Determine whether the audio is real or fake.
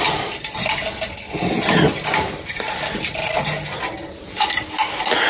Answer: real